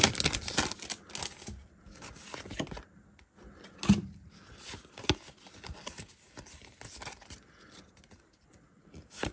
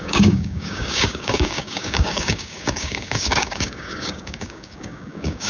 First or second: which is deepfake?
second